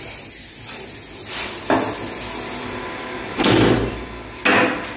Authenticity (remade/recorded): recorded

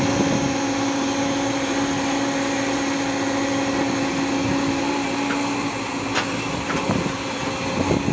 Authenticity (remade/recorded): recorded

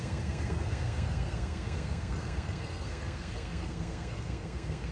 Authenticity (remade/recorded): remade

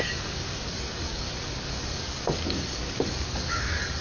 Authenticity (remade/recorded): remade